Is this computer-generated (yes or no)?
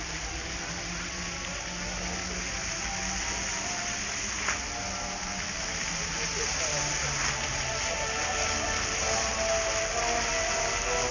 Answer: no